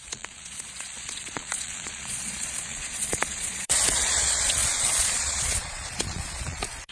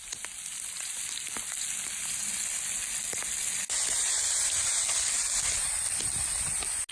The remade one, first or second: first